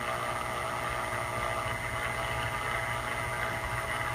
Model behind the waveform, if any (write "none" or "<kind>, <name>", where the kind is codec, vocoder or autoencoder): none